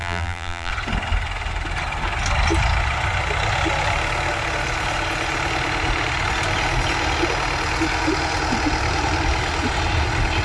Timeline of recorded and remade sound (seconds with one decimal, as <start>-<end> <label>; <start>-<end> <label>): 0.0-0.7 remade; 0.7-10.4 recorded